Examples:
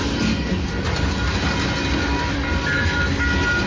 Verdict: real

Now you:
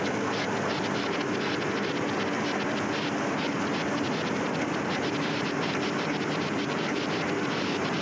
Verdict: real